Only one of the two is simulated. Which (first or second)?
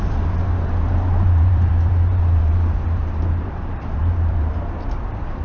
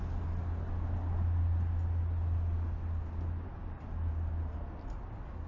first